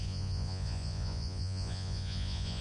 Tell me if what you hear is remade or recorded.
remade